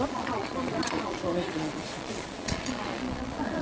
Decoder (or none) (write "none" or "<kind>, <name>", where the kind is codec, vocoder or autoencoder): vocoder, Vocos